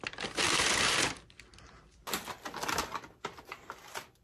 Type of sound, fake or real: real